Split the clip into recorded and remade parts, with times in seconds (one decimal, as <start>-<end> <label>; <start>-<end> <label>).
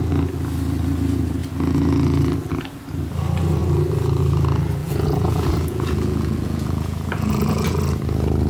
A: 0.0-4.8 recorded; 4.8-7.8 remade; 7.8-8.5 recorded